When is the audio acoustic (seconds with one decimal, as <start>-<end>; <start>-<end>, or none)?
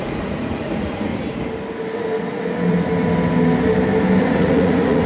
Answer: 1.1-4.2